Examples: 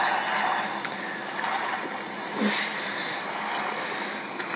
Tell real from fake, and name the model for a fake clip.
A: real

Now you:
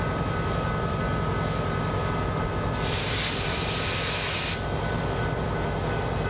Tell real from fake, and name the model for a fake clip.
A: real